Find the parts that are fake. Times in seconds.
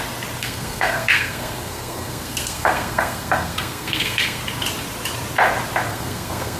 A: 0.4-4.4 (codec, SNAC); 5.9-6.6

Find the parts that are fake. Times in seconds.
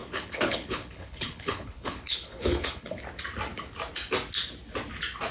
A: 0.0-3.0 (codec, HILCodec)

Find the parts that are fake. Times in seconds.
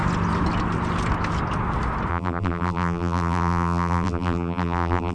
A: 2.1-5.1 (vocoder, BigVGAN v2)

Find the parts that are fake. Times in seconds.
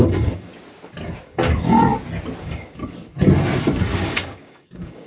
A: 0.0-0.5 (codec, DAC); 1.2-1.9; 2.4-3.1; 4.0-5.1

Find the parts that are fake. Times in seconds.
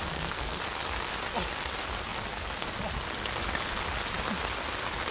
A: 0.0-0.6 (codec, SNAC)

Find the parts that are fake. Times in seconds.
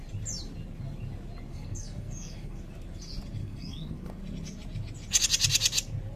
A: 1.5-2.6 (codec, SNAC); 3.4-4.2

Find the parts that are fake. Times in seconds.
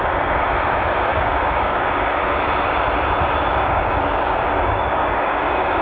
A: 1.1-1.9 (codec, DAC); 3.5-5.8